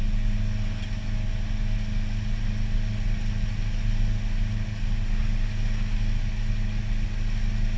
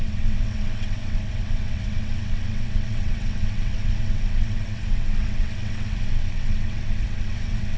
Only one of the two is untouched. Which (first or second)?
first